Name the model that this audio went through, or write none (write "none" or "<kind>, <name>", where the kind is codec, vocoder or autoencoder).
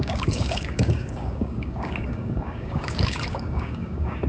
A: codec, DAC